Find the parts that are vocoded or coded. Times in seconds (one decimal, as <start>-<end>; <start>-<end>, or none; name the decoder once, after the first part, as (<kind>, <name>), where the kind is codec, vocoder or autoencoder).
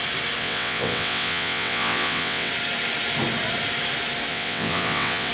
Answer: 0.4-2.5 (vocoder, WaveNeXt); 4.3-5.3